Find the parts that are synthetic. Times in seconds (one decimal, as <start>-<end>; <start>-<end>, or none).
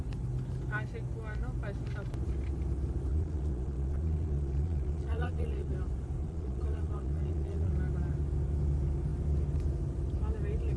3.1-5.7; 6.2-7.7